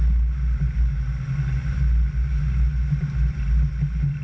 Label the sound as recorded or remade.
recorded